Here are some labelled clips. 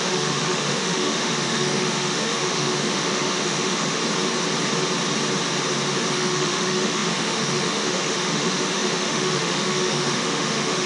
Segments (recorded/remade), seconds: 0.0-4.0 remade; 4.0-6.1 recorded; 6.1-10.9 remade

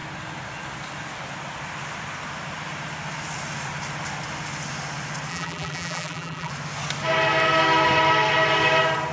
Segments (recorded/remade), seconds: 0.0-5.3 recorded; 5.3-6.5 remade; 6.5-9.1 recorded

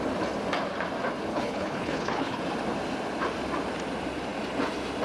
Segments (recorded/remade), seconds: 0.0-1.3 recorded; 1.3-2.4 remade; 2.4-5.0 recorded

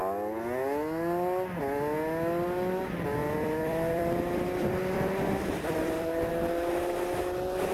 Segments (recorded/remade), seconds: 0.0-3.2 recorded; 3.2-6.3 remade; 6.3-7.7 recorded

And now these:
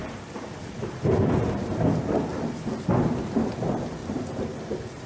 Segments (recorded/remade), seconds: 0.0-1.9 remade; 1.9-2.3 recorded; 2.3-3.5 remade; 3.5-4.0 recorded; 4.0-5.1 remade

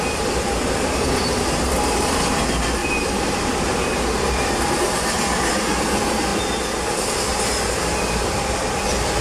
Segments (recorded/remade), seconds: 0.0-2.8 recorded; 2.8-4.7 remade; 4.7-9.2 recorded